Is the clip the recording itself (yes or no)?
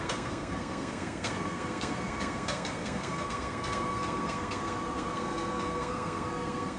no